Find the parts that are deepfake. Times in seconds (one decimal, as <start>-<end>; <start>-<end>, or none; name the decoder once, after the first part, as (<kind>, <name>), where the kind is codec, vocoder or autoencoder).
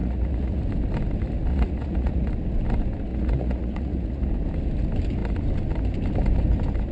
0.0-0.6 (vocoder, Vocos); 1.5-2.3; 3.1-4.3